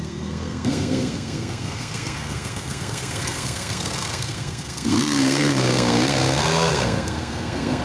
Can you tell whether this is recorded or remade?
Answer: remade